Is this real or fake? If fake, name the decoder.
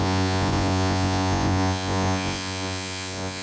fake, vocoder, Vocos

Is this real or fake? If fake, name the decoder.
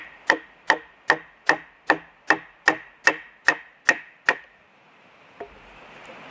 real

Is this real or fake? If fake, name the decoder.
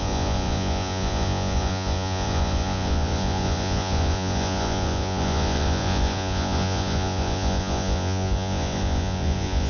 fake, vocoder, Vocos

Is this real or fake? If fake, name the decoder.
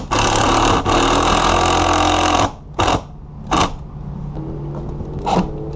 real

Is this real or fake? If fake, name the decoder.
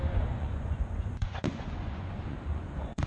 fake, vocoder, Vocos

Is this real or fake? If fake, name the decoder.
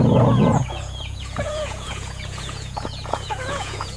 fake, vocoder, Vocos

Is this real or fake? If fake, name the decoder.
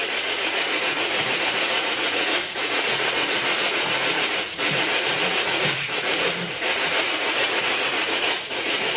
fake, vocoder, Vocos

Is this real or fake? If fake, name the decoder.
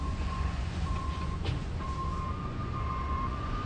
fake, vocoder, Vocos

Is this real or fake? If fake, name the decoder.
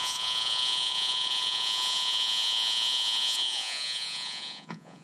fake, vocoder, Vocos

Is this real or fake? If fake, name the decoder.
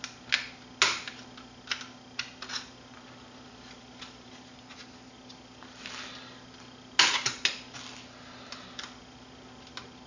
real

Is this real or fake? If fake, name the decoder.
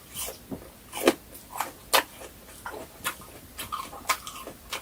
real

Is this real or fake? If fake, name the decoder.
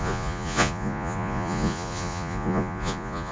fake, vocoder, Vocos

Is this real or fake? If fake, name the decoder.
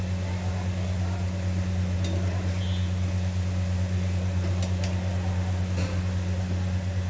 real